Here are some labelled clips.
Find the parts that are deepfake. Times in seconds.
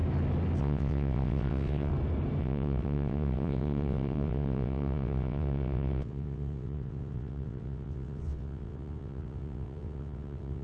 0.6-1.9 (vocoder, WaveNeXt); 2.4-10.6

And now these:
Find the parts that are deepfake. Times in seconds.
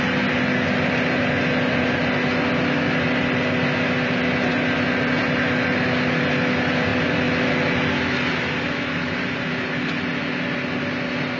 none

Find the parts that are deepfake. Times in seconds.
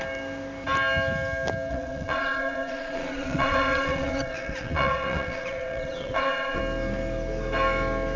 1.7-6.6 (vocoder, WaveNeXt)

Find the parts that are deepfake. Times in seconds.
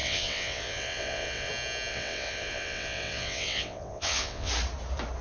0.0-1.5 (vocoder, WaveNeXt); 1.9-4.5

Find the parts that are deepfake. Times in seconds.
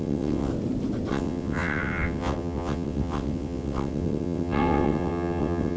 0.0-0.5 (vocoder, WaveNeXt); 1.1-5.8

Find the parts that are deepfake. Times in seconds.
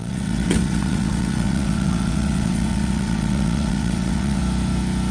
0.0-4.4 (vocoder, WaveNeXt)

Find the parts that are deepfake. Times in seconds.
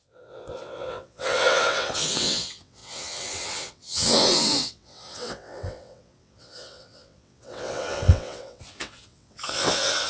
0.0-10.1 (vocoder, WaveNeXt)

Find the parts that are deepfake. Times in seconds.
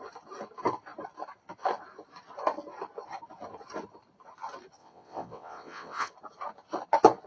4.8-6.1 (vocoder, WaveNeXt)